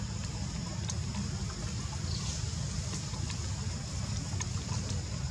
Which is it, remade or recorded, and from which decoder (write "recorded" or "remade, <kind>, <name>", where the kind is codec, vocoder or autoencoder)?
recorded